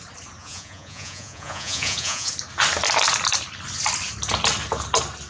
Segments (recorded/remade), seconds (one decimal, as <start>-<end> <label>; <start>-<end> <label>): 0.0-0.4 recorded; 0.4-2.3 remade; 2.3-5.3 recorded